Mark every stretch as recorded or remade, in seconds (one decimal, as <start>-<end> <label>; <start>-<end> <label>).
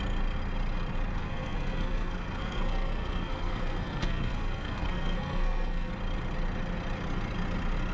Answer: 0.0-1.2 recorded; 1.2-5.9 remade; 5.9-7.9 recorded